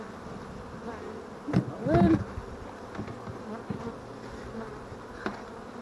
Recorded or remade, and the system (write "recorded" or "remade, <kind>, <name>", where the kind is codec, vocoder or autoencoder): recorded